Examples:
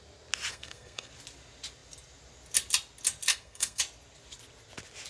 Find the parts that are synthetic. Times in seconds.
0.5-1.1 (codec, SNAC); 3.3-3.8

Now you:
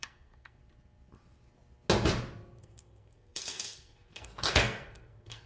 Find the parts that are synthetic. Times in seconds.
0.0-0.6 (codec, SNAC); 2.6-5.5

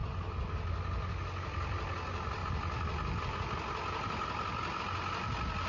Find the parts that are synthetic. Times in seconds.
none